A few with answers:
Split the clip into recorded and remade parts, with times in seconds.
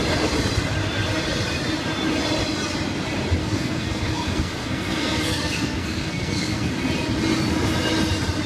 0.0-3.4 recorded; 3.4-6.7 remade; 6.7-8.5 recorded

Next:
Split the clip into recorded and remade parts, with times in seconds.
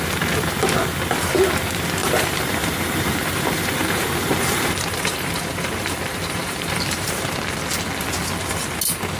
0.0-2.0 recorded; 2.0-7.2 remade; 7.2-9.2 recorded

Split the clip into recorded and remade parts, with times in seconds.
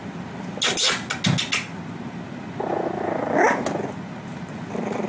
0.0-5.1 recorded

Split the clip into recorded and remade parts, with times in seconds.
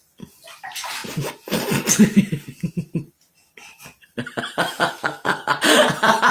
0.0-4.9 recorded; 4.9-5.4 remade; 5.4-6.3 recorded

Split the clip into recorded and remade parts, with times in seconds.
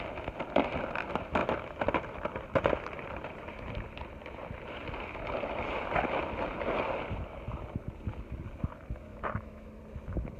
0.0-9.1 recorded; 9.1-9.8 remade; 9.8-10.4 recorded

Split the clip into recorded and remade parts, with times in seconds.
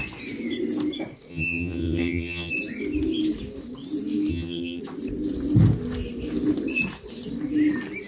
0.0-1.3 recorded; 1.3-2.5 remade; 2.5-4.3 recorded; 4.3-4.8 remade; 4.8-8.1 recorded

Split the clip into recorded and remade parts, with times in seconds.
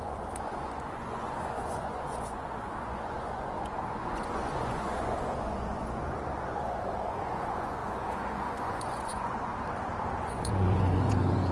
0.0-9.5 remade; 9.5-10.2 recorded; 10.2-11.5 remade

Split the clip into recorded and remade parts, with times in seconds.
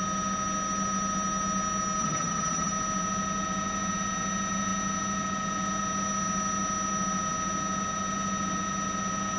0.0-2.0 recorded; 2.0-2.7 remade; 2.7-9.4 recorded